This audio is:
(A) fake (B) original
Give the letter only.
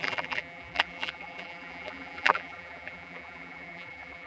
A